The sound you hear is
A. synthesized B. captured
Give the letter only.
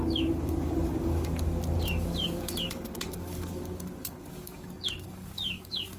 A